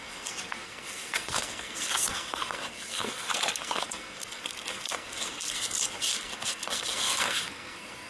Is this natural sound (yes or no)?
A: no